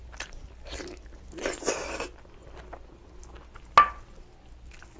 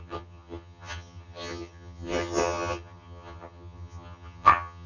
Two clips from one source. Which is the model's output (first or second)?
second